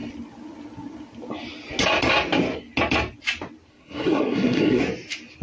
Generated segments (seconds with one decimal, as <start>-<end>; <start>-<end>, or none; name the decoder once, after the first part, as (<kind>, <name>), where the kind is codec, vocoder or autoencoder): 3.7-4.8 (codec, SNAC)